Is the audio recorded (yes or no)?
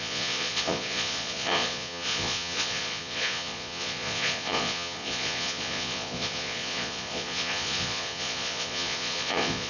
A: no